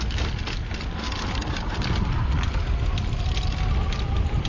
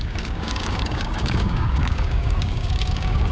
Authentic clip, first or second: first